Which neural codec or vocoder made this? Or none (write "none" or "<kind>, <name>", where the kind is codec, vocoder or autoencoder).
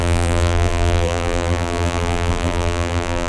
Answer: vocoder, BigVGAN v2